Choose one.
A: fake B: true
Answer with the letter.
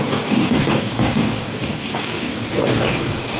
A